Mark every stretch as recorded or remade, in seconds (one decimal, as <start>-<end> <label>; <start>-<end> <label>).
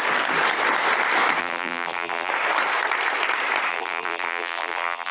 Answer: 0.0-1.4 recorded; 1.4-2.3 remade; 2.3-3.7 recorded; 3.7-5.1 remade